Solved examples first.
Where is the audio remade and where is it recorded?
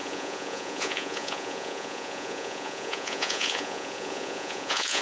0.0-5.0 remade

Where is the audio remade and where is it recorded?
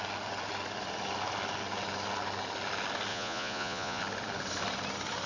0.0-3.1 recorded; 3.1-4.0 remade; 4.0-5.3 recorded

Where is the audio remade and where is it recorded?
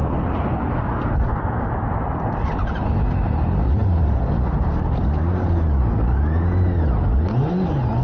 0.0-8.0 recorded